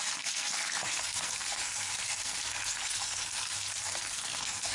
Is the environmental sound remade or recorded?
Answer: remade